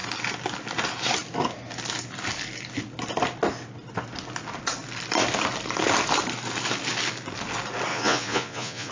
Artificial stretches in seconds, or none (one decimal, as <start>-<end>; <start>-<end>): 7.9-8.9